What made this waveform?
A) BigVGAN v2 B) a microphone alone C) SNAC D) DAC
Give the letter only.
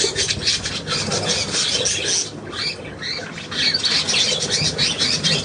B